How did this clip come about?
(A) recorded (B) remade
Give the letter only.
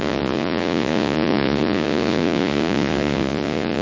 B